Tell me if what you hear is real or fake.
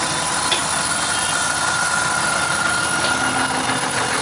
real